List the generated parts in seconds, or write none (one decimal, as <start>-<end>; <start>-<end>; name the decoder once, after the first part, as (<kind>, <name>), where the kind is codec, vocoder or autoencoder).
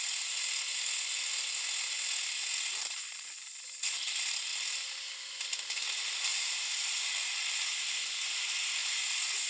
none